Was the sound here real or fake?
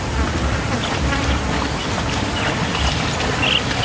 real